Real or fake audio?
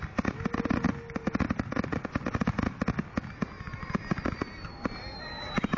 real